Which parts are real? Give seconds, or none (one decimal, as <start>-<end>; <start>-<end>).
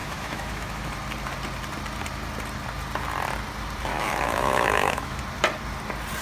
0.9-3.9; 5.2-6.2